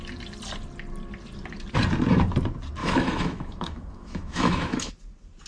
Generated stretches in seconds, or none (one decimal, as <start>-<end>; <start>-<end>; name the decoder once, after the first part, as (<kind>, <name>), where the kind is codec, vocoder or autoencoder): 2.8-4.9 (autoencoder, DAC-VAE)